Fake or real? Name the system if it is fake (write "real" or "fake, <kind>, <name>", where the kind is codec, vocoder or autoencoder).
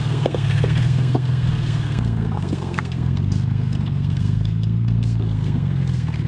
fake, codec, SNAC